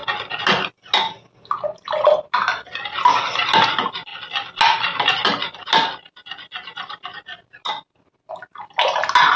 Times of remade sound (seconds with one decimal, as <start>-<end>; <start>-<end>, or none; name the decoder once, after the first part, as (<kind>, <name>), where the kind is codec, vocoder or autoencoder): none